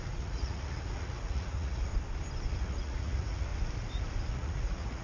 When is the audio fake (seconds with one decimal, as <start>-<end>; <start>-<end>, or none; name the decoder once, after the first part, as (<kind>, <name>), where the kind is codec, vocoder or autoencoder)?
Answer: 0.0-1.9 (vocoder, Vocos); 2.6-3.5; 4.3-5.0